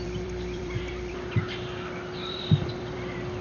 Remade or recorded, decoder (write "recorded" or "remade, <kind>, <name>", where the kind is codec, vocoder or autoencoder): remade, vocoder, BigVGAN v2